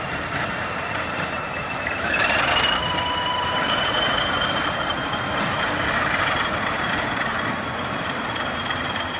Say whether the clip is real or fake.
fake